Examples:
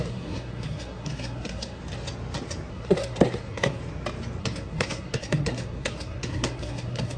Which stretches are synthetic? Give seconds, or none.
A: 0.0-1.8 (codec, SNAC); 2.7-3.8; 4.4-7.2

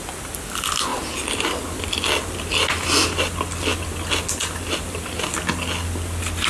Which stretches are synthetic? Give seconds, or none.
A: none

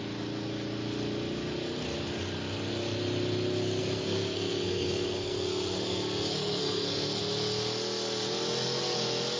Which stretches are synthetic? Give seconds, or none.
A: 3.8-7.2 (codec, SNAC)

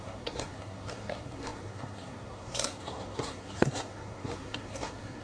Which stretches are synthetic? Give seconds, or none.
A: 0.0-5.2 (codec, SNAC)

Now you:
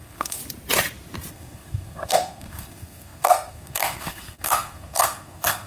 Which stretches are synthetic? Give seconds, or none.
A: 0.0-0.4 (codec, SNAC); 1.3-5.7